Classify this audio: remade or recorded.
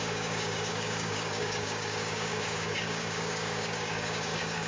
remade